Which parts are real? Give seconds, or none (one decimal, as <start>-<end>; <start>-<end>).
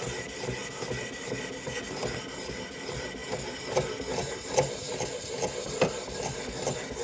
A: 0.0-7.0